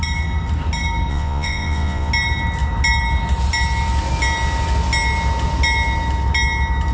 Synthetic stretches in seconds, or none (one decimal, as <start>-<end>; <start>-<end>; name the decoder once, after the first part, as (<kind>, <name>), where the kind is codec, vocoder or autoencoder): 1.1-2.1 (vocoder, Vocos)